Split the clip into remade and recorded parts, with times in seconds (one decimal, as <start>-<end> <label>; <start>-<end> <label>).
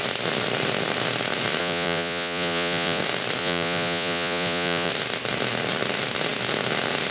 0.0-1.6 recorded; 1.6-3.0 remade; 3.0-3.4 recorded; 3.4-4.9 remade; 4.9-7.1 recorded